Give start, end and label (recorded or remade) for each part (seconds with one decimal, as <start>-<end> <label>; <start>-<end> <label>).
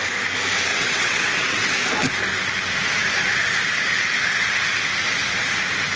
0.0-0.7 recorded; 0.7-1.7 remade; 1.7-6.0 recorded